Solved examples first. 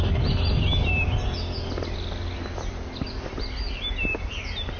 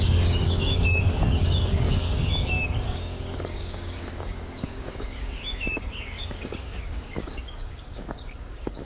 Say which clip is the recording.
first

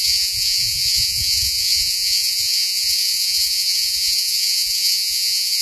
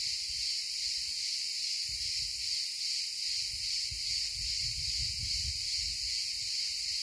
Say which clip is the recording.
second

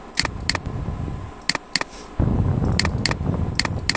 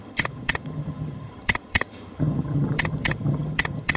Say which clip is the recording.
first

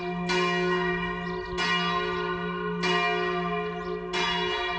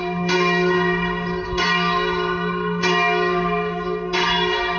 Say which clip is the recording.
first